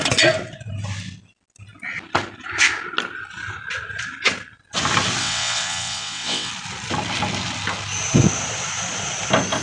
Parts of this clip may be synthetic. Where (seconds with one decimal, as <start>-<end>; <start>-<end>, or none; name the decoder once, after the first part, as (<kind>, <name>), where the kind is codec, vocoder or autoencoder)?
5.2-6.5 (vocoder, WaveNeXt)